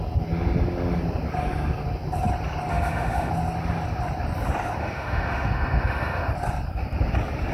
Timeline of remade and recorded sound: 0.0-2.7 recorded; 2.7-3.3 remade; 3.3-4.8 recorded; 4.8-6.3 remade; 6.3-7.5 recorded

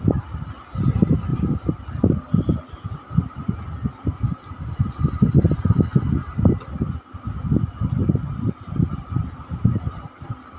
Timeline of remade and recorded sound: 0.0-10.6 recorded

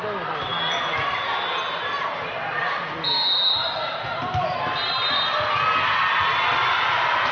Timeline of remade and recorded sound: 0.0-7.3 recorded

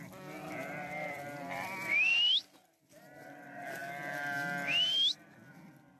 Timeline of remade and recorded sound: 0.0-0.4 recorded; 0.4-2.9 remade; 2.9-6.0 recorded

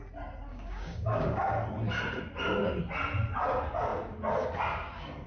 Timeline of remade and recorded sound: 0.0-0.5 recorded; 0.5-1.4 remade; 1.4-5.3 recorded